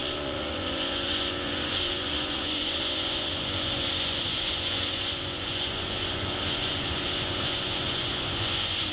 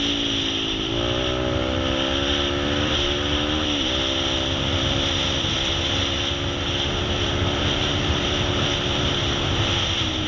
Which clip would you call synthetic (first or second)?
first